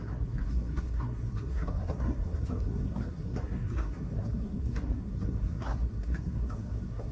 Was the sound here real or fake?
fake